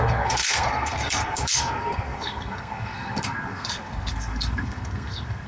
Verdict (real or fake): fake